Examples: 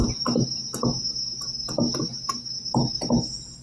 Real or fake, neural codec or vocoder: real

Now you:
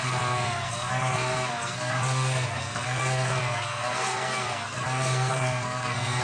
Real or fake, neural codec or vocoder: fake, codec, SNAC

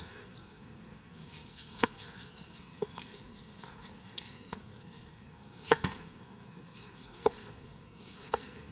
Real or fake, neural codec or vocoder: fake, codec, SNAC